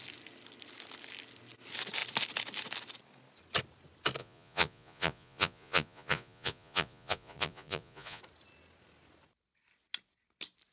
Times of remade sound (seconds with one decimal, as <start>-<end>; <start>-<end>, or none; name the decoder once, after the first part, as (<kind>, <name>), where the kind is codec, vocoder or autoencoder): 4.2-8.2 (vocoder, Vocos)